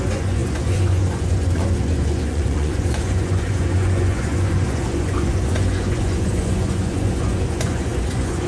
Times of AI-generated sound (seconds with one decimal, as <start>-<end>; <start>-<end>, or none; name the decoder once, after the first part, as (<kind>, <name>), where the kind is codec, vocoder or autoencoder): 0.0-8.5 (vocoder, Vocos)